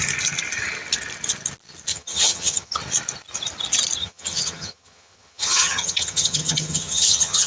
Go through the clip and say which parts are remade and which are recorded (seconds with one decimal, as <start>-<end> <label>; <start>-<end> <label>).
0.0-1.9 recorded; 1.9-2.8 remade; 2.8-4.0 recorded; 4.0-7.5 remade